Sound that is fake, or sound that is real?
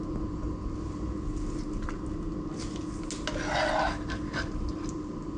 real